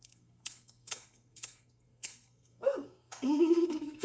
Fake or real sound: fake